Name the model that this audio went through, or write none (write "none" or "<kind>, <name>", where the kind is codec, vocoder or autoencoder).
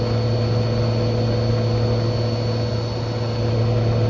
none